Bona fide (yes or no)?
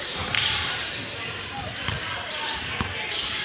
no